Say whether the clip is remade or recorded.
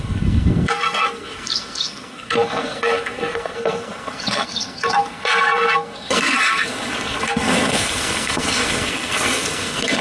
remade